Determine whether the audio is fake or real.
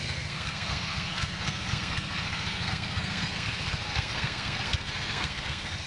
fake